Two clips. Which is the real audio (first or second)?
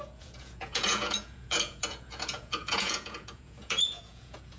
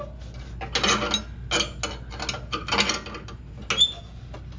second